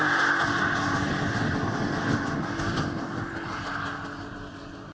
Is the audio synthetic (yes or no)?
no